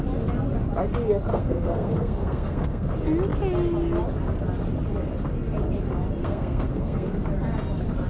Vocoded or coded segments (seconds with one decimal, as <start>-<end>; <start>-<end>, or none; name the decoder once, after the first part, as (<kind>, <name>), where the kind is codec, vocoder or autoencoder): 1.3-2.9 (codec, SNAC); 6.2-7.1